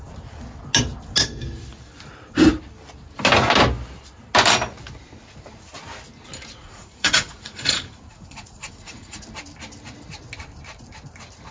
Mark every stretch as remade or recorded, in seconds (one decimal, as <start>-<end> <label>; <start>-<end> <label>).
0.0-6.6 recorded; 6.6-9.2 remade; 9.2-11.5 recorded